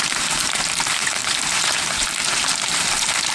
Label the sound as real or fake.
fake